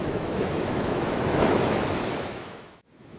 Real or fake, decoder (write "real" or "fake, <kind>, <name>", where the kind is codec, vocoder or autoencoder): fake, autoencoder, DAC-VAE